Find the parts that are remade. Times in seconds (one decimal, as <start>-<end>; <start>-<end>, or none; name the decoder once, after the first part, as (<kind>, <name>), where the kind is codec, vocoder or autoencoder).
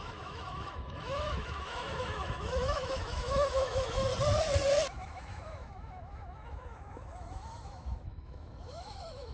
0.0-4.1 (autoencoder, DAC-VAE); 4.9-9.3